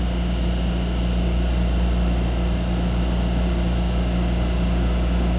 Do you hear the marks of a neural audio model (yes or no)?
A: no